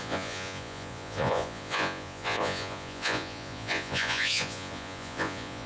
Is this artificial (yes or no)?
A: yes